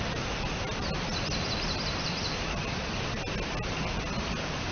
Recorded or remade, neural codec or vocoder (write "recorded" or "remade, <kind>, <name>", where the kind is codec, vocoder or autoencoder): recorded